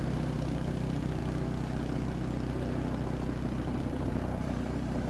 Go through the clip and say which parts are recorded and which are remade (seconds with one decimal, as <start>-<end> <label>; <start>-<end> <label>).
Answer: 0.0-1.2 remade; 1.2-3.8 recorded; 3.8-5.1 remade